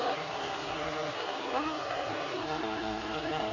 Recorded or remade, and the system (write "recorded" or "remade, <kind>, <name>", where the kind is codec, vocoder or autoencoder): remade, codec, SNAC